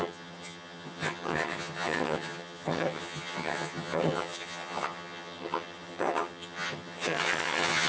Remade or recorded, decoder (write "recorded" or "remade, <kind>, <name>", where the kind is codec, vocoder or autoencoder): remade, vocoder, HiFi-GAN